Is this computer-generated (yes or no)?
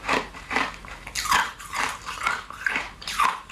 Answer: yes